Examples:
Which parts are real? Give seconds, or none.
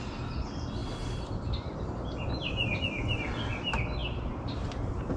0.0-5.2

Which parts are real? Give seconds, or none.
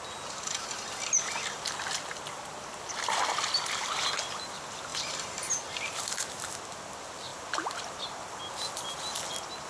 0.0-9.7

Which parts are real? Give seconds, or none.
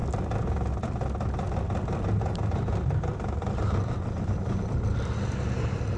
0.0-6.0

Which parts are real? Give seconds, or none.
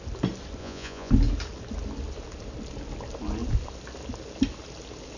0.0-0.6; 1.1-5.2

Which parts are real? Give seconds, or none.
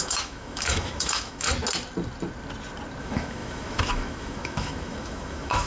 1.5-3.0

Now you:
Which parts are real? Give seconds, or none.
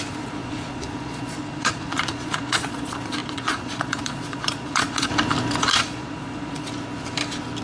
5.1-5.7; 6.7-7.6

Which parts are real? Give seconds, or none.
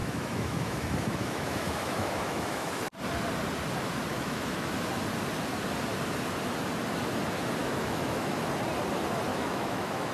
2.7-4.1; 4.7-7.6; 8.4-9.3